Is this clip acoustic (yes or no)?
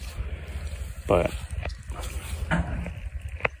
yes